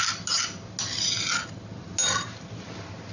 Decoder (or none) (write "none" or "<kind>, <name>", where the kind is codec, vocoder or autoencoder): none